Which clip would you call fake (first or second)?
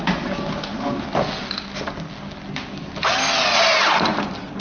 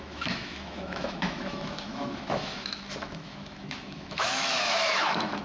second